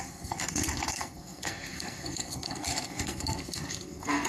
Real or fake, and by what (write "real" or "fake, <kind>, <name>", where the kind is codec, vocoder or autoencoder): fake, codec, SNAC